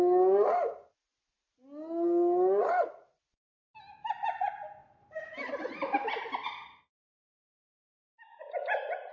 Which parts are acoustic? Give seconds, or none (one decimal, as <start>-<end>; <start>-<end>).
0.0-4.8; 6.2-9.1